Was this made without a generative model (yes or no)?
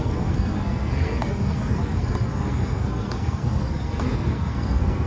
no